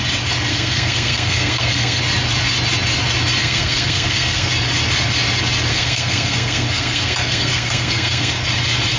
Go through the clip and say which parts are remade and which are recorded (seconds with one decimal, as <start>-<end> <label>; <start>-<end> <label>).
0.0-0.5 recorded; 0.5-2.0 remade; 2.0-3.4 recorded; 3.4-4.5 remade; 4.5-5.7 recorded; 5.7-8.3 remade; 8.3-9.0 recorded